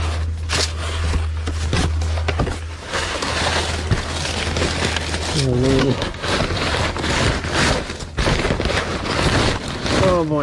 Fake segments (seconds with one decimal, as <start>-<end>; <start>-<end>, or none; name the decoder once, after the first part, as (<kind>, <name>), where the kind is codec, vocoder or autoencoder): 2.9-3.4 (codec, SNAC); 5.8-6.4